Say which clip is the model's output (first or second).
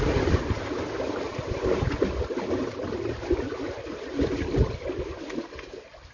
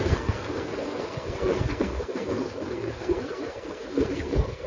second